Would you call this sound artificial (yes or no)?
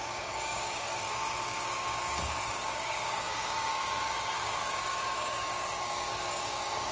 yes